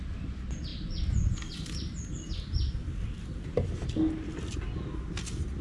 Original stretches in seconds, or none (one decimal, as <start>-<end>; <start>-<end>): 0.0-5.6